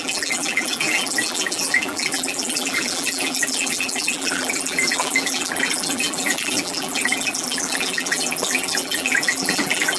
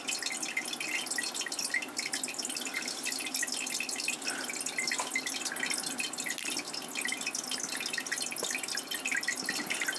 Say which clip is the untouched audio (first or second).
second